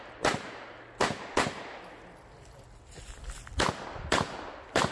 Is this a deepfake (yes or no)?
no